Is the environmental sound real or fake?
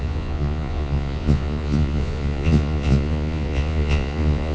fake